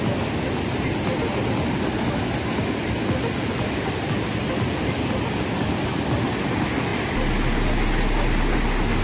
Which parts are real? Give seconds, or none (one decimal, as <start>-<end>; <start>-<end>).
0.0-9.0